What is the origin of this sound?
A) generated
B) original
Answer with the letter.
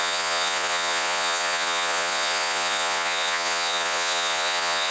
A